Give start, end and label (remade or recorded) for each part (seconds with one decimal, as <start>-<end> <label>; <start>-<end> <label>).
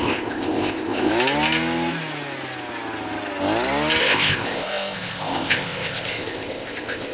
0.0-1.1 remade; 1.1-4.0 recorded; 4.0-7.1 remade